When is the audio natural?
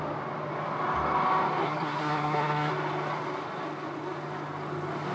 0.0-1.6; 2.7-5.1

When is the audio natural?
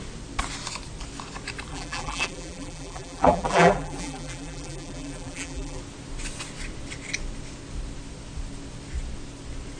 0.0-1.7; 5.8-9.8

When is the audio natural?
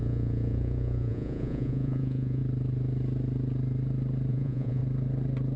2.4-4.3; 4.8-5.6